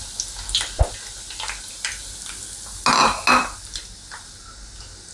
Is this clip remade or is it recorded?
recorded